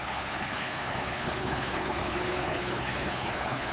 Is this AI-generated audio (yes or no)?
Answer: yes